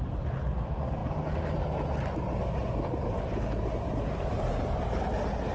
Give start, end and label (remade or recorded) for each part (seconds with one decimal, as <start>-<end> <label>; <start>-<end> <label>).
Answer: 0.0-5.5 recorded